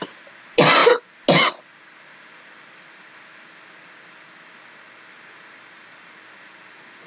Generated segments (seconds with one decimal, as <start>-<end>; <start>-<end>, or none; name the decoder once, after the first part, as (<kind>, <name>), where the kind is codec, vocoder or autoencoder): none